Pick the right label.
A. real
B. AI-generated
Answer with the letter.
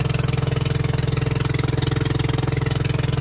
A